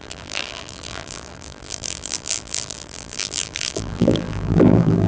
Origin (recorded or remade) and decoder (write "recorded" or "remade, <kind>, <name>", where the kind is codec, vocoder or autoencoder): remade, vocoder, BigVGAN v2